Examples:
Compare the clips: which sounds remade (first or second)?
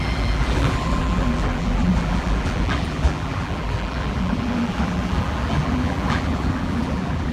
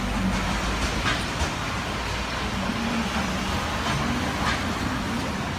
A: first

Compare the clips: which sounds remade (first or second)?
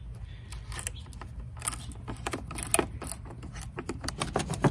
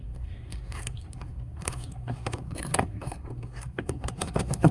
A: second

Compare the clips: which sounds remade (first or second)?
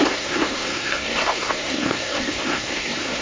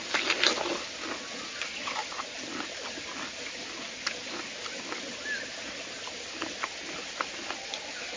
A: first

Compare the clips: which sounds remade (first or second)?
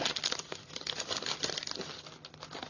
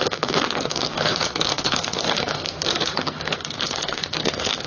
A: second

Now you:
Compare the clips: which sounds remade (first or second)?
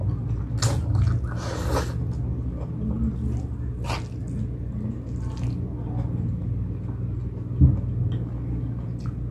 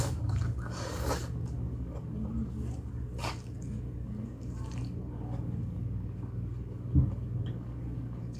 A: second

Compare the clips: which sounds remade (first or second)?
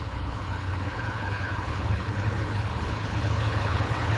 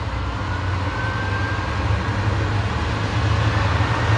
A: first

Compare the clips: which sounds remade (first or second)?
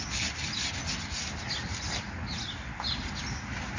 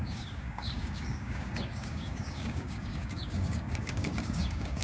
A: second